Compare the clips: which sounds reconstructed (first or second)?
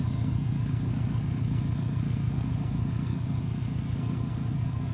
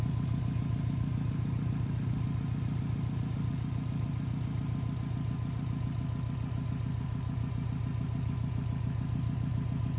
first